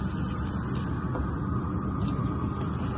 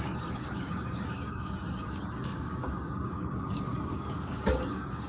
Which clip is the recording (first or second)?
first